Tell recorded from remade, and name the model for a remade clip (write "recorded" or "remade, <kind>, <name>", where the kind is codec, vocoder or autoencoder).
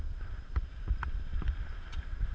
remade, vocoder, BigVGAN v2